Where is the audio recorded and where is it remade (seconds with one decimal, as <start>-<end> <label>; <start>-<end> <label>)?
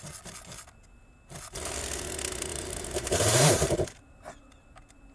0.0-2.5 recorded; 2.5-4.4 remade; 4.4-5.1 recorded